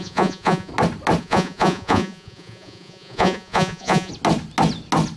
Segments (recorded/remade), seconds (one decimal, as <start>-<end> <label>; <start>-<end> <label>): 0.0-0.7 remade; 0.7-1.2 recorded; 1.2-4.1 remade; 4.1-5.2 recorded